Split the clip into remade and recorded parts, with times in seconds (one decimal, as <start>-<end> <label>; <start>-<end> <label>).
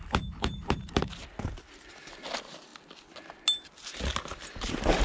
0.0-1.2 remade; 1.2-2.0 recorded; 2.0-2.7 remade; 2.7-4.3 recorded; 4.3-5.0 remade